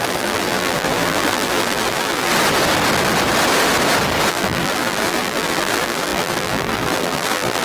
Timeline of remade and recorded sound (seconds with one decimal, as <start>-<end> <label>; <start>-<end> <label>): 0.0-2.3 remade; 2.3-4.3 recorded; 4.3-7.6 remade